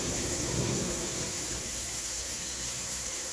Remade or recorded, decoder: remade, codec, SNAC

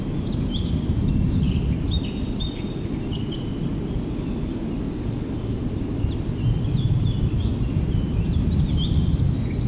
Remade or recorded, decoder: recorded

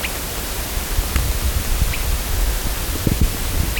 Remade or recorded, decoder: recorded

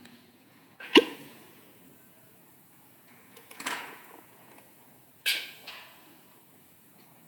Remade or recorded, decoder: remade, vocoder, Vocos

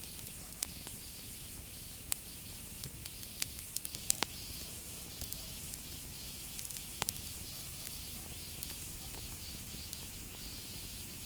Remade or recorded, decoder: remade, autoencoder, DAC-VAE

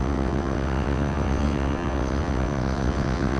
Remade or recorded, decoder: remade, vocoder, WaveNeXt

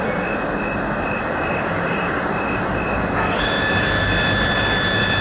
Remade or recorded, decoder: recorded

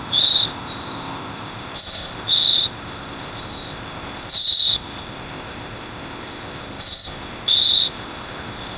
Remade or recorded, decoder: remade, codec, ZipCodec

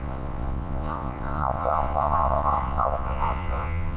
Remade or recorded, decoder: remade, vocoder, Vocos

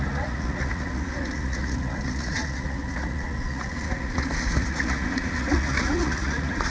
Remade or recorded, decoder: remade, vocoder, Vocos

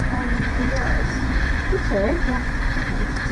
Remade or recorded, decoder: remade, vocoder, Vocos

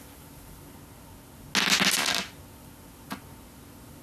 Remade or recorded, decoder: recorded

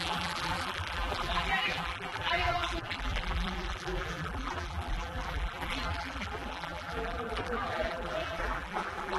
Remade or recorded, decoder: remade, vocoder, BigVGAN v2